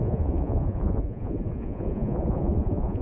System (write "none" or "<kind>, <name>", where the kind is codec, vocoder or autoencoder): vocoder, Vocos